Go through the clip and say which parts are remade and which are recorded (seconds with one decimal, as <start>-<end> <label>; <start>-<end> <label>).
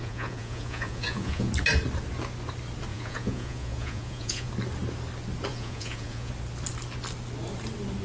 0.0-1.5 remade; 1.5-2.9 recorded; 2.9-4.5 remade; 4.5-5.5 recorded; 5.5-6.3 remade; 6.3-8.0 recorded